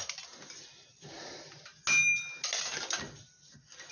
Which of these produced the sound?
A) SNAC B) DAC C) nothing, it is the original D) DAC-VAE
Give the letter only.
C